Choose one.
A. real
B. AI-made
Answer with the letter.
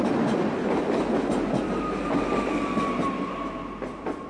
A